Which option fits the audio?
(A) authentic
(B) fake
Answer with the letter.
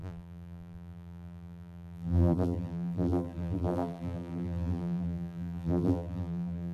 B